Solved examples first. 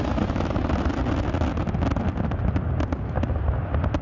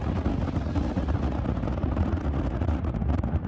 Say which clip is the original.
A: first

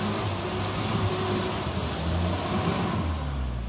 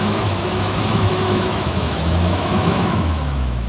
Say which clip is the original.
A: first